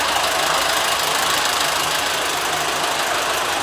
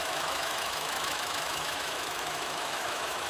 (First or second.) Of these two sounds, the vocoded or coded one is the second